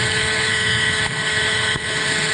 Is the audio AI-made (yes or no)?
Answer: yes